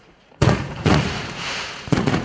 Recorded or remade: remade